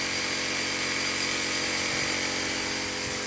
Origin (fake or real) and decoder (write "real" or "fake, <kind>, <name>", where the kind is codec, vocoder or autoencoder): real